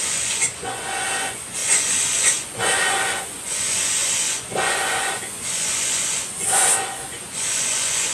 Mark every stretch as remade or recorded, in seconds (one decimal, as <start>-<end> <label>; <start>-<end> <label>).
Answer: 0.0-8.1 remade